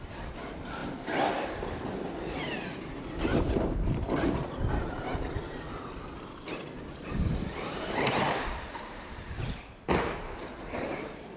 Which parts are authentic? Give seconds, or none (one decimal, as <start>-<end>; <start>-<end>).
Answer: none